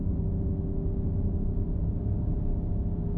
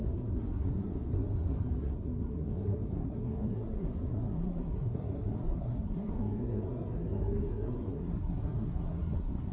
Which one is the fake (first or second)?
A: second